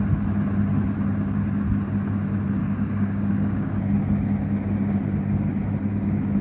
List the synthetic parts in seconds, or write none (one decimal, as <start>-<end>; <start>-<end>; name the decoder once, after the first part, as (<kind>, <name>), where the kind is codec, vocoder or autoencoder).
2.6-3.8 (codec, DAC)

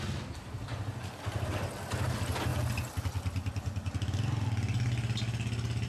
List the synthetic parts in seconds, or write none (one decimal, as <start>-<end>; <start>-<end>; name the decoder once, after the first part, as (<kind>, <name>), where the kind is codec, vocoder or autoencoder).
none

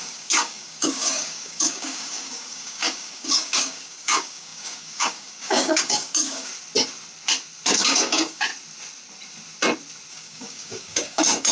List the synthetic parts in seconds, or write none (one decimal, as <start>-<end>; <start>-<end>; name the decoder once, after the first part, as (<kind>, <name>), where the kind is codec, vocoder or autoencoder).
0.0-6.5 (codec, DAC); 7.7-8.5; 10.1-11.5

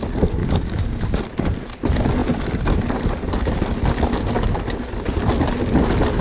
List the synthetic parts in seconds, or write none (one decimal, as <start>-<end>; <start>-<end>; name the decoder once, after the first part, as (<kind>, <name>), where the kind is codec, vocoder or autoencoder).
0.4-1.2 (codec, DAC)

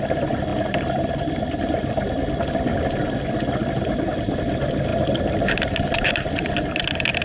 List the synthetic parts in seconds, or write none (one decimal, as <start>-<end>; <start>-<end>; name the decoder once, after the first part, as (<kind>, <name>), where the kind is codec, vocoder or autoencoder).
none

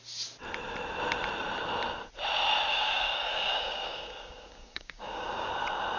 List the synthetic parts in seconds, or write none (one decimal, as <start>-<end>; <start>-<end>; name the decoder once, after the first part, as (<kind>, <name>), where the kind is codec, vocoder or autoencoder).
2.7-5.5 (codec, DAC)

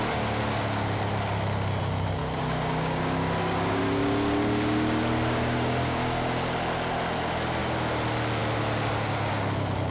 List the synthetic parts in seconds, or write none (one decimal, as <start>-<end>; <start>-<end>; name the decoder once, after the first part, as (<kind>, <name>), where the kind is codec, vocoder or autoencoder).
2.2-6.4 (codec, DAC)

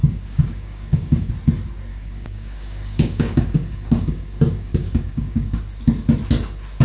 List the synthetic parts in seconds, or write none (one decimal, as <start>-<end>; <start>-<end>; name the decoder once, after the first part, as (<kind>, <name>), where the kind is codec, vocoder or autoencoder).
0.0-1.3 (codec, DAC); 1.9-5.6